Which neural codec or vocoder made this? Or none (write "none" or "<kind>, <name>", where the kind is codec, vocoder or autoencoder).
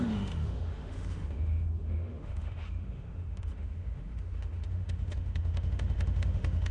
autoencoder, DAC-VAE